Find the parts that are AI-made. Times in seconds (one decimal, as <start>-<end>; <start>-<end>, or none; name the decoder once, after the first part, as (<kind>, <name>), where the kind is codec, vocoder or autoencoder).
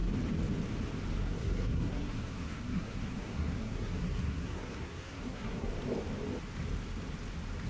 1.2-5.7 (codec, SNAC)